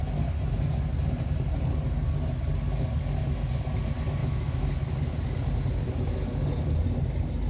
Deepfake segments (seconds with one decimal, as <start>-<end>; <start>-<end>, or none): 4.2-4.7